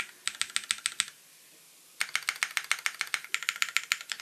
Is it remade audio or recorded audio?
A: recorded